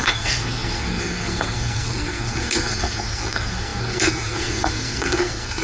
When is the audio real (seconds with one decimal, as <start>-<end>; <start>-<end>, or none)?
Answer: none